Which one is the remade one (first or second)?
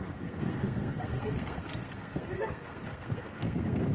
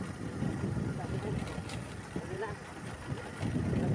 first